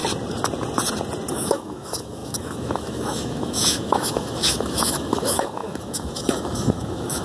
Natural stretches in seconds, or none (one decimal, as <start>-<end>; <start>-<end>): 0.0-1.3